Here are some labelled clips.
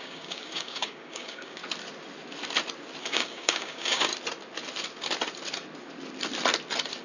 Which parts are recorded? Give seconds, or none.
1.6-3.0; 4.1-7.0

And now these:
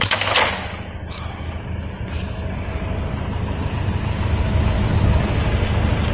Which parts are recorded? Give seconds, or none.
0.0-5.4